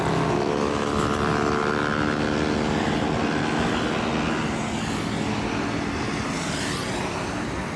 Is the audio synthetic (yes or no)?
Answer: no